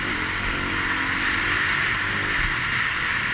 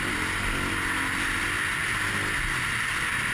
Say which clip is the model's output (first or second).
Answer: first